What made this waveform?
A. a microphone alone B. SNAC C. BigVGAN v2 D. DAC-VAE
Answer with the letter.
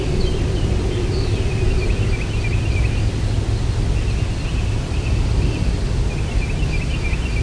A